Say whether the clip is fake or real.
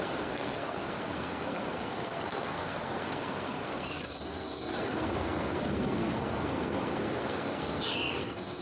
fake